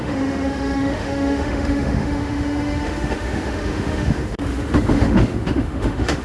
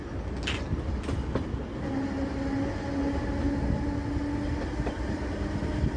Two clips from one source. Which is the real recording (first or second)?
second